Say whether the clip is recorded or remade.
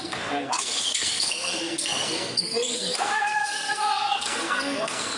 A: remade